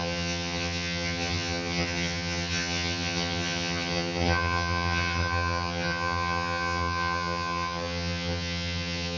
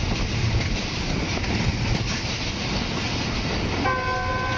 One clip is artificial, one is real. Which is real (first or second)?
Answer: second